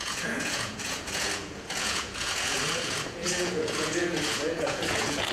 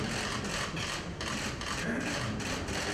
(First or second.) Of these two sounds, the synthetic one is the first